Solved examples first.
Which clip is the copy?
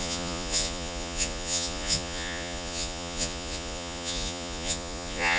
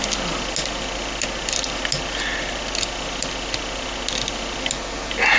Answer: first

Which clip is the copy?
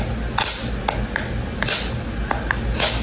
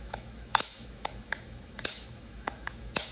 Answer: second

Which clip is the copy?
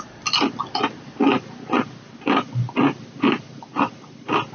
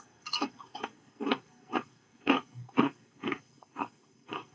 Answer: second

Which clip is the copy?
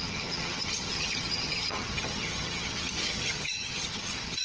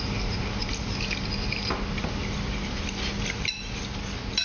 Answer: first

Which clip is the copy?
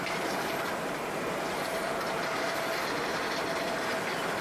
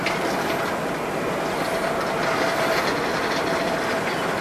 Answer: first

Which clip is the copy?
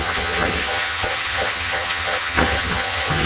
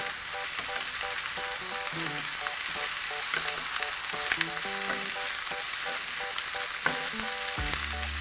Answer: first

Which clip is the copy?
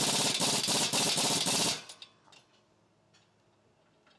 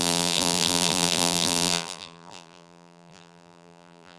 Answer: second